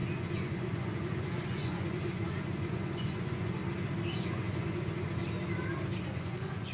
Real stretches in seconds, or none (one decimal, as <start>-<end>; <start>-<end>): 3.6-4.2; 5.2-6.0